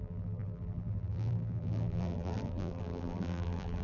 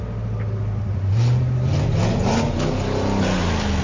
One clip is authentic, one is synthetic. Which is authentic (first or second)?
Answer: second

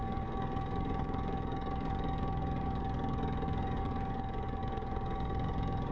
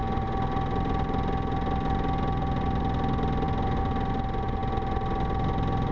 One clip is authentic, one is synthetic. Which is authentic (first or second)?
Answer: second